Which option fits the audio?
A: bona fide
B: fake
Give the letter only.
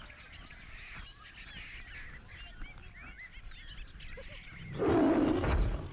A